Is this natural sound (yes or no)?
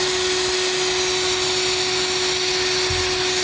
yes